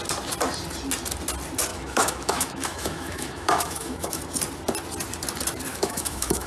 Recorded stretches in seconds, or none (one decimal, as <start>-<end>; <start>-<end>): 0.0-1.7; 4.2-5.7